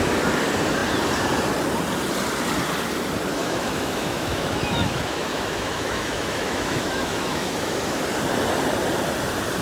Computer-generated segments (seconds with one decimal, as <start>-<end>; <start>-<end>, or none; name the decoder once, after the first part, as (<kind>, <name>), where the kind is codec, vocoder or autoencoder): 3.4-8.0 (autoencoder, DAC-VAE)